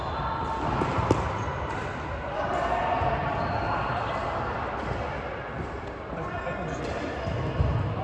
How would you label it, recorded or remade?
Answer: recorded